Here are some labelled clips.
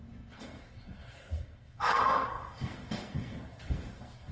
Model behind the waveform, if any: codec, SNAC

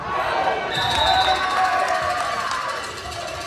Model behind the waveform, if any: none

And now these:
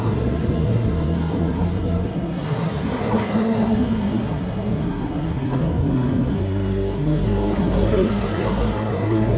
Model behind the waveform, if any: codec, SNAC